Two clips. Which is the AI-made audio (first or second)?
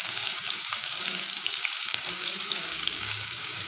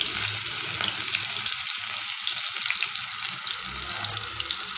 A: first